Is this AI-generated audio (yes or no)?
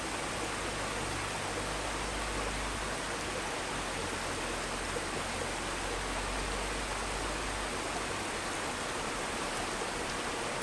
no